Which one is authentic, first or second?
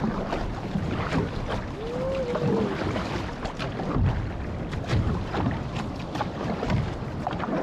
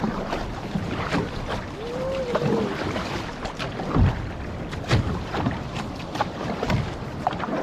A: first